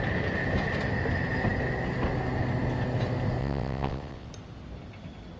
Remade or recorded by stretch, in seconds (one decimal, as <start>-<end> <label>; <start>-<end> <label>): 0.0-3.4 recorded; 3.4-4.3 remade; 4.3-5.4 recorded